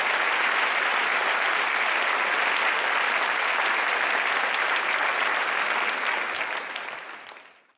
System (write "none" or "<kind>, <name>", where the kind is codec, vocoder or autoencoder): none